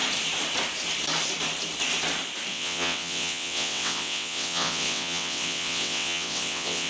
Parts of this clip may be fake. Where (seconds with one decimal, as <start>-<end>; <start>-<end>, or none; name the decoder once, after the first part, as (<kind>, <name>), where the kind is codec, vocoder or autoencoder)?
2.5-6.9 (vocoder, WaveNeXt)